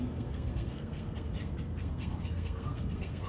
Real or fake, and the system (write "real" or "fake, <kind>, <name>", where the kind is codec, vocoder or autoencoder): fake, codec, SNAC